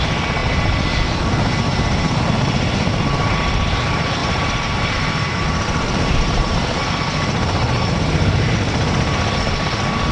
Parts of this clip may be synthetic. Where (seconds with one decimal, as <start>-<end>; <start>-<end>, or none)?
4.2-6.8